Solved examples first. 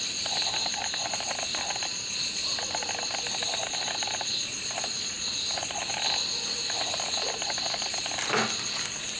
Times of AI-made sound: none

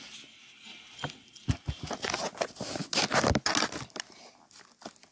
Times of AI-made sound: none

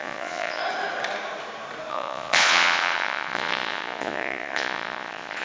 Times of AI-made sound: 0.0-0.6 (vocoder, Vocos); 1.9-5.4

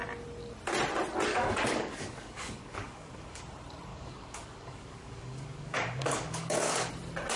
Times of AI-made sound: 1.3-3.4 (codec, DAC); 3.9-6.9